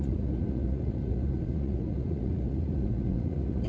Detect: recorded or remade remade